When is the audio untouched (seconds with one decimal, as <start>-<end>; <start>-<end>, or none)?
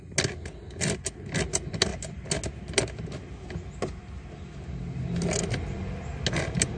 0.0-6.8